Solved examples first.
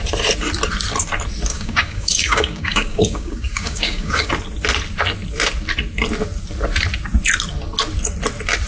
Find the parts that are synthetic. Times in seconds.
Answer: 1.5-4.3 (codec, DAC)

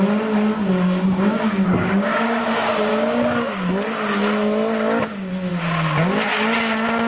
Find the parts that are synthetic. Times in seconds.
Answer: 1.3-2.4 (codec, DAC); 2.9-3.7

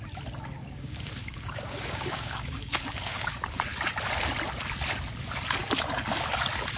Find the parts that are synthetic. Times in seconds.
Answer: 0.6-3.3 (codec, DAC)

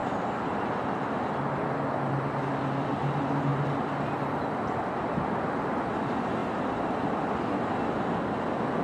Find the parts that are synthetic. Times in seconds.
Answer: none

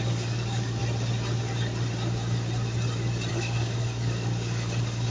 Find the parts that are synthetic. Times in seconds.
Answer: 0.0-0.8 (codec, DAC); 3.3-5.1